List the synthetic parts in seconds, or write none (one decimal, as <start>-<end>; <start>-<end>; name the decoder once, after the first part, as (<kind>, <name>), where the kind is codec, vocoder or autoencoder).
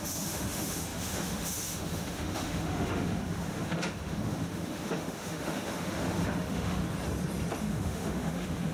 0.0-6.8 (autoencoder, DAC-VAE); 7.6-8.7